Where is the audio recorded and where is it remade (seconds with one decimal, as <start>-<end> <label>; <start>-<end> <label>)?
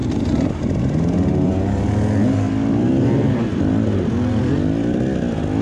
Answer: 0.0-5.6 recorded